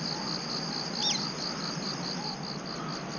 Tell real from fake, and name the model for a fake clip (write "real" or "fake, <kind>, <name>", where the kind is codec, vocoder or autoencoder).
real